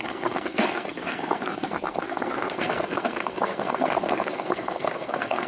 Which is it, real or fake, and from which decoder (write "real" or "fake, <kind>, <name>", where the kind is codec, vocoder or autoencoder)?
fake, codec, SNAC